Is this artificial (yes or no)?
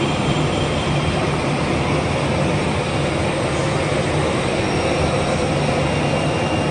no